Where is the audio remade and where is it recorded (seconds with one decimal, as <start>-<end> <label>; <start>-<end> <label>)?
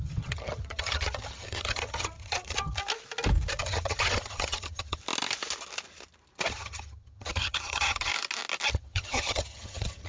0.0-2.8 remade; 2.8-3.6 recorded; 3.6-5.0 remade; 5.0-6.5 recorded; 6.5-8.1 remade; 8.1-8.7 recorded; 8.7-10.1 remade